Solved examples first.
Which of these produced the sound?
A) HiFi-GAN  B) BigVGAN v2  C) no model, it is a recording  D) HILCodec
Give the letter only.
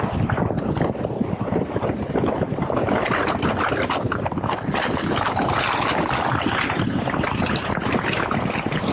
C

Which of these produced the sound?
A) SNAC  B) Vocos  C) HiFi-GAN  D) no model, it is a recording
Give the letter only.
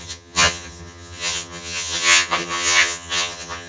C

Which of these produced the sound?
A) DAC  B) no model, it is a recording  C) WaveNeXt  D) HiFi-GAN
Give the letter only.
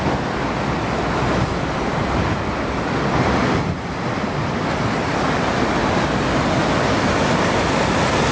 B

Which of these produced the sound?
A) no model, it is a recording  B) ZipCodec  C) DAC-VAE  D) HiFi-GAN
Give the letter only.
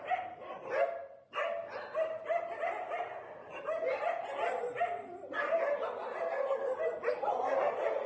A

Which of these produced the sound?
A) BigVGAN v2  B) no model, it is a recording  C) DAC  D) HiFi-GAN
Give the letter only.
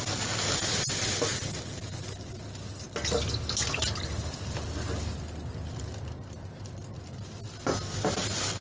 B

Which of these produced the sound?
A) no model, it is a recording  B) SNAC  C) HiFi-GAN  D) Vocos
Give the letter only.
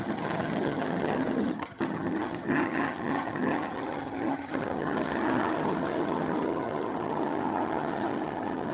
C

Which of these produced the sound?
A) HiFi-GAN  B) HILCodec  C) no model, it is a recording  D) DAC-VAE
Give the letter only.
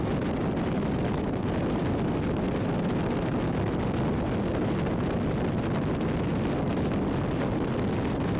C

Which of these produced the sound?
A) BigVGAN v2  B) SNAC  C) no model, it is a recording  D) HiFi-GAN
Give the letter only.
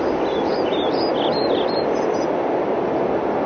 C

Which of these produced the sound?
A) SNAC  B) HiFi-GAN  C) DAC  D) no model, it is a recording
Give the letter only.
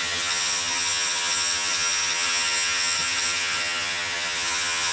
B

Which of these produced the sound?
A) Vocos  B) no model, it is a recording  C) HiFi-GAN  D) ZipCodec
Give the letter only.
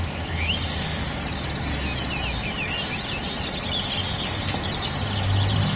B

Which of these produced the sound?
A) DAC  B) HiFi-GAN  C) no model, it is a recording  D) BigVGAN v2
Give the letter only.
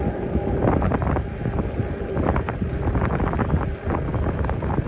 C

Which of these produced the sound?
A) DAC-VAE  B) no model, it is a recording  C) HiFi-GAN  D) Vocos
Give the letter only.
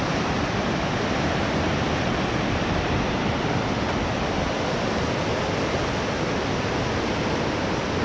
B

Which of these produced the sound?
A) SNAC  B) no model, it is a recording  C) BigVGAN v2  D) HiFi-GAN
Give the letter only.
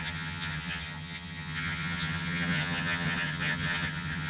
D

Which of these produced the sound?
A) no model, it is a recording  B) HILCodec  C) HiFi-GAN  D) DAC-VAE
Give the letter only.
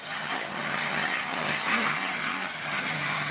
C